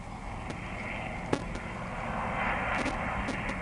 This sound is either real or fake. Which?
real